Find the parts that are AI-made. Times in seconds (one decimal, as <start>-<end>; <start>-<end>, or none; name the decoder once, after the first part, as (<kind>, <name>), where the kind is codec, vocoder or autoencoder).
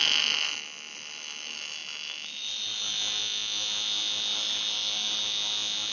4.3-5.2 (vocoder, BigVGAN v2)